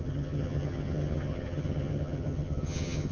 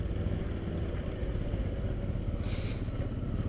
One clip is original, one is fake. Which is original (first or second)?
second